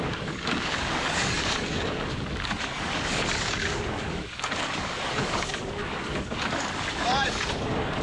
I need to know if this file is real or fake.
fake